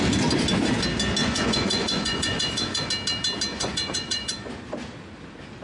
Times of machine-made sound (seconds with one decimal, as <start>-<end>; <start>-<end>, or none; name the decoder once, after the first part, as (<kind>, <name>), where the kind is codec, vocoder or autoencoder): 1.2-2.9 (vocoder, Vocos); 3.5-4.5